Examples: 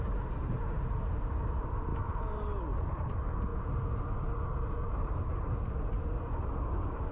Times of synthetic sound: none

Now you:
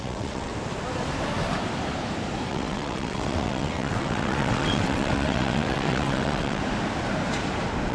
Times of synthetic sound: 0.0-0.5 (vocoder, WaveNeXt); 2.5-6.6

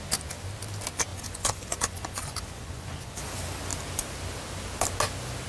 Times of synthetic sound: 1.1-3.3 (vocoder, Vocos)

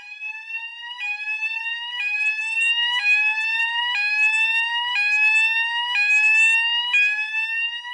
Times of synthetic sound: 0.7-3.8 (vocoder, BigVGAN v2)

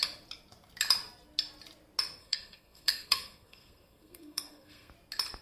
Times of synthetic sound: 2.2-4.9 (codec, SNAC)